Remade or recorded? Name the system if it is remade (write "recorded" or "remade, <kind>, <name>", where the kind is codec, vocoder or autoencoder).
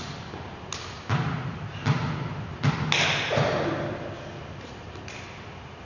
recorded